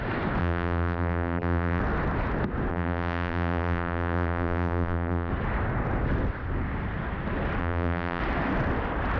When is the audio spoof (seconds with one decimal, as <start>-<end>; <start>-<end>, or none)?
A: 0.4-1.8; 2.7-5.3; 7.6-8.2